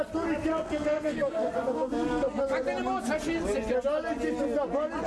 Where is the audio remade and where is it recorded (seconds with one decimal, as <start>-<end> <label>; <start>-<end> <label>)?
0.0-0.5 recorded; 0.5-2.4 remade; 2.4-5.1 recorded

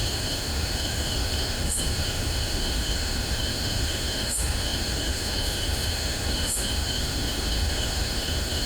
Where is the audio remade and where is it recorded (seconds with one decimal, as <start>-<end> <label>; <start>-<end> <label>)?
0.0-8.7 remade

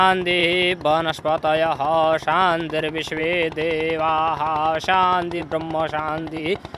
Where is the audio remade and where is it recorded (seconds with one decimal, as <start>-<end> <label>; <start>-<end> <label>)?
0.0-0.4 recorded; 0.4-3.2 remade; 3.2-5.4 recorded; 5.4-6.8 remade

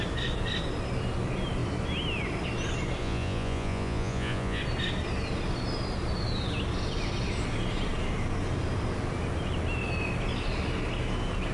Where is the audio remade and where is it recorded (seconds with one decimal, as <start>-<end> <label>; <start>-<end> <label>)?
0.0-3.0 recorded; 3.0-4.6 remade; 4.6-11.5 recorded

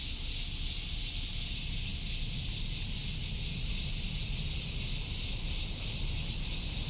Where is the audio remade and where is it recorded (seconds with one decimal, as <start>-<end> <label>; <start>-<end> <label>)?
0.0-6.9 recorded